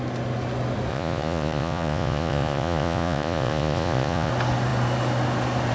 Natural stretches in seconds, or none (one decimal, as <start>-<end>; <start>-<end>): 0.0-0.9; 4.3-5.7

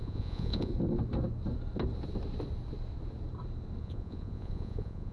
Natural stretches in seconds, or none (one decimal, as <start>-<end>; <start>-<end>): 0.7-3.8

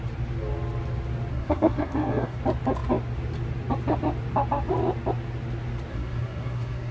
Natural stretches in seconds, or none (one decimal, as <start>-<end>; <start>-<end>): 0.0-1.3; 2.4-5.9

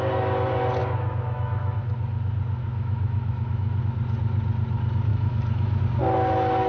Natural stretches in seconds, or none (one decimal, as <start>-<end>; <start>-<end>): 0.0-0.8; 1.8-2.6; 3.8-5.1; 5.8-6.7

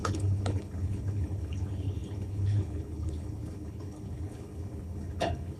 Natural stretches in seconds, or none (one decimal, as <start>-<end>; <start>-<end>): none

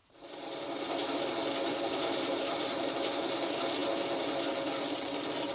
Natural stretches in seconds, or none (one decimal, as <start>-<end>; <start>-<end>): 2.9-5.5